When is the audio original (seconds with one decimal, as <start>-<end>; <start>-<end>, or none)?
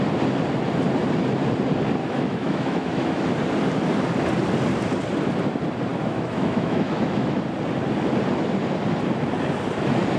0.0-2.0; 3.3-5.9; 7.4-10.2